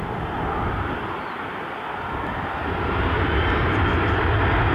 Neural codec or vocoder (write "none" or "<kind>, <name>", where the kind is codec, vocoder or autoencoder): none